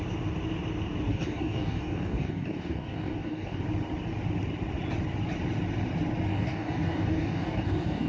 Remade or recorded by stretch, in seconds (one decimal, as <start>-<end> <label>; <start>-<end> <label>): 0.0-1.1 recorded; 1.1-3.6 remade; 3.6-6.3 recorded; 6.3-8.1 remade